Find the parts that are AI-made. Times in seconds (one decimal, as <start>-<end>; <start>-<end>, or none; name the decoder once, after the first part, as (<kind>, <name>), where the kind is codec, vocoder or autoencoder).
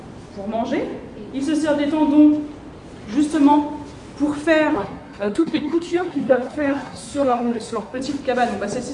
4.7-8.0 (codec, SNAC)